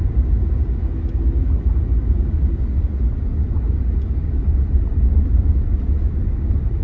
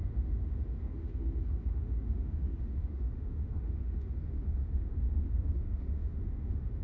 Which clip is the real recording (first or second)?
first